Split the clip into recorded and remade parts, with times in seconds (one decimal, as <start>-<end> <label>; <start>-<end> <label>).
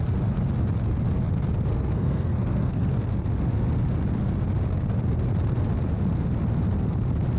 0.0-1.7 recorded; 1.7-2.9 remade; 2.9-7.4 recorded